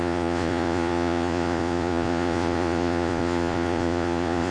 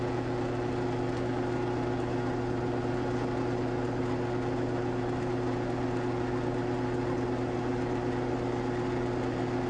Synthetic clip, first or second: first